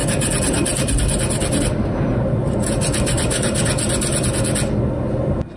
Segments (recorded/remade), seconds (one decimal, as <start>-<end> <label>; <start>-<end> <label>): 0.0-5.6 recorded